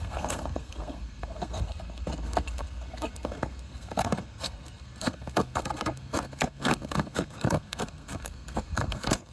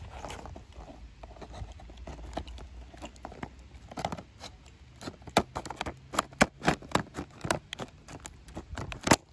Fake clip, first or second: first